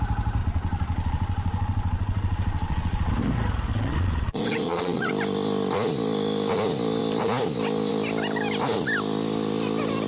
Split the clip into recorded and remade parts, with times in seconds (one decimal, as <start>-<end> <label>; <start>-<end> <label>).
0.0-0.4 recorded; 0.4-3.1 remade; 3.1-3.7 recorded; 3.7-5.1 remade; 5.1-10.1 recorded